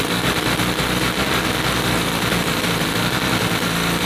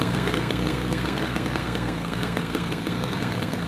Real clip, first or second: first